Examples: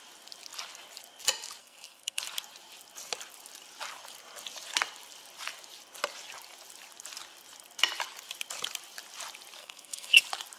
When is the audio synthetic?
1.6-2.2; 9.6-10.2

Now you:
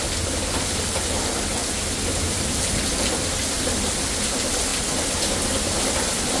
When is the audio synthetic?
none

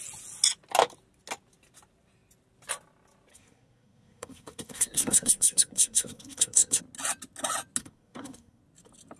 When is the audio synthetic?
3.3-6.8; 7.8-8.6

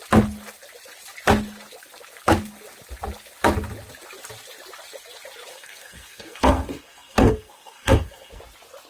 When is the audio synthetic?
5.5-8.4

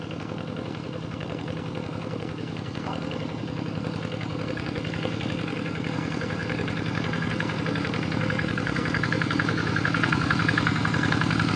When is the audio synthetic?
0.0-11.6